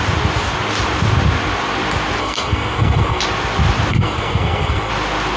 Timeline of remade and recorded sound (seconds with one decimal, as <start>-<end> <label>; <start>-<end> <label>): 0.0-2.2 recorded; 2.2-3.2 remade; 3.2-3.9 recorded; 3.9-4.9 remade; 4.9-5.4 recorded